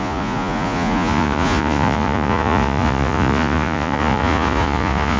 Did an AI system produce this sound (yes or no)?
yes